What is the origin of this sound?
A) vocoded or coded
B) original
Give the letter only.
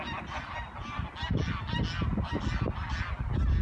B